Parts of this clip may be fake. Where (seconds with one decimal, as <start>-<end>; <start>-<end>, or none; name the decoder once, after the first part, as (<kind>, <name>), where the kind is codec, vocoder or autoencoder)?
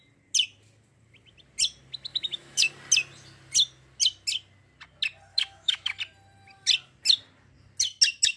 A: 2.1-2.7 (autoencoder, DAC-VAE); 5.3-6.0